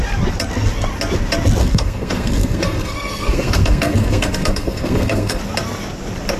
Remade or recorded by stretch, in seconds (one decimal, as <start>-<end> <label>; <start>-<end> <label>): 0.0-1.6 recorded; 1.6-5.4 remade; 5.4-6.4 recorded